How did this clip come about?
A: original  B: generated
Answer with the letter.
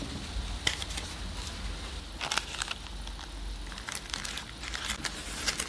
A